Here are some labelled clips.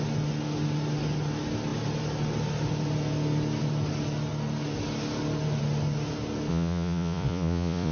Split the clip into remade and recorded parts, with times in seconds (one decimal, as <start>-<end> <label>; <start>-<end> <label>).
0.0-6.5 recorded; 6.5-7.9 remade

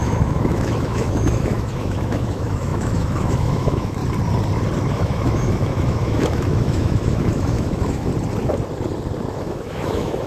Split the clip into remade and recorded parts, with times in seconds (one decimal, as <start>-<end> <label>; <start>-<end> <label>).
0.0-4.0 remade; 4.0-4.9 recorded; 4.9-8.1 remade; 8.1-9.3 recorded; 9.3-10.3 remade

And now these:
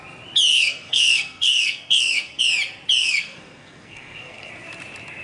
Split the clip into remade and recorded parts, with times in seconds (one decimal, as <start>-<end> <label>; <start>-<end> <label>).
0.0-0.5 recorded; 0.5-2.4 remade; 2.4-3.0 recorded; 3.0-4.5 remade; 4.5-5.2 recorded

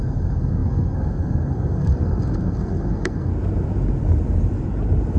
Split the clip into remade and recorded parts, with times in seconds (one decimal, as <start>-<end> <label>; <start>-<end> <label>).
0.0-3.3 remade; 3.3-5.2 recorded